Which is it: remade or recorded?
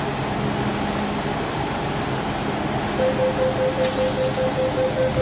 recorded